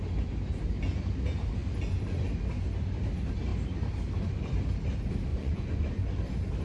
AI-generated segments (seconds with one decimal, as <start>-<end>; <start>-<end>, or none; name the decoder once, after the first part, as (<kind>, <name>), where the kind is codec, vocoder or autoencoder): 5.3-5.9 (vocoder, Vocos)